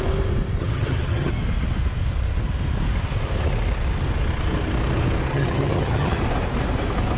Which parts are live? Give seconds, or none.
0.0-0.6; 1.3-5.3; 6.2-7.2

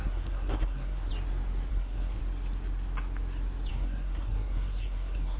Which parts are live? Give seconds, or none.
1.1-1.7; 2.2-3.7

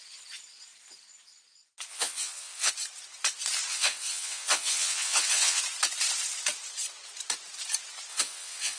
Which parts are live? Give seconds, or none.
0.0-1.9; 2.7-3.7; 5.6-8.1

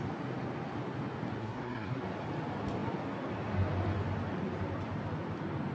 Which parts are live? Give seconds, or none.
0.0-1.4; 2.0-5.7

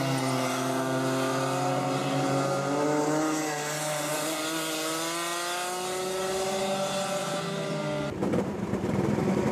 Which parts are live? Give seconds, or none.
0.0-7.2; 7.7-8.2; 8.9-9.5